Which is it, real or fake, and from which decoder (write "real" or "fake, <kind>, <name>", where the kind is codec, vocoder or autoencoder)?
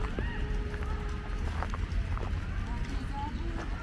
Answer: real